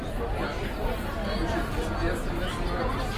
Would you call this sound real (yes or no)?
yes